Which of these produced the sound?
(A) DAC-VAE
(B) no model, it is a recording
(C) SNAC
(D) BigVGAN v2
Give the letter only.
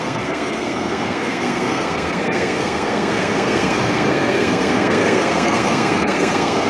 C